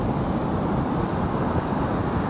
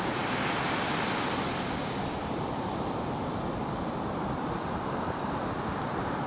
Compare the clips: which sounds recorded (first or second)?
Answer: first